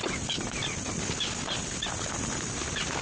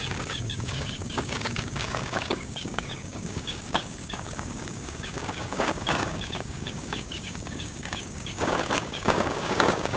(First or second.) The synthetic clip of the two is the second